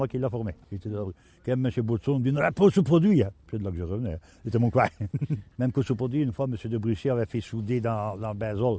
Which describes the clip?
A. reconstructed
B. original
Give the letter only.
B